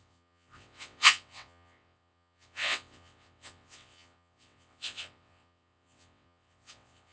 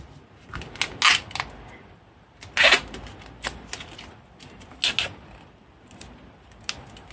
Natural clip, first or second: second